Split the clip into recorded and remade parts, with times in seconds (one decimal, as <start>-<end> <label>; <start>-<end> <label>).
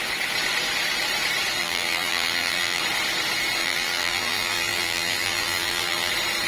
0.0-1.6 recorded; 1.6-2.8 remade; 2.8-3.6 recorded; 3.6-6.1 remade; 6.1-6.5 recorded